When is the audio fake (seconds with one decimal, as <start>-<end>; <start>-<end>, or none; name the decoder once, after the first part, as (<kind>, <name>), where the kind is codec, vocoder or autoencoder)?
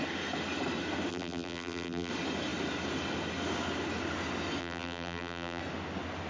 1.1-2.1 (vocoder, BigVGAN v2); 4.6-5.6